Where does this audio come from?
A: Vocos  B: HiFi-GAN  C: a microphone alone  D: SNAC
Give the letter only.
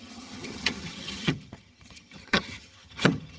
B